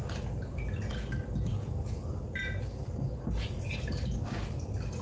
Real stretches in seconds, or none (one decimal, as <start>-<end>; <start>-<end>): 0.0-5.0